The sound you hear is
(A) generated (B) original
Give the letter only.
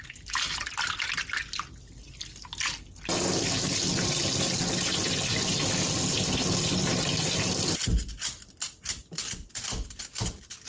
B